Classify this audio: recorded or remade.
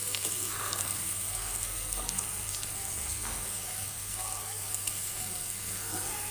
remade